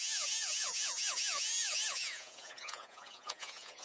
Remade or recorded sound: remade